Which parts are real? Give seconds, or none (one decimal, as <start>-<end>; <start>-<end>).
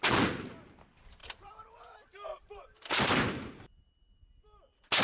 0.0-1.2; 4.2-5.0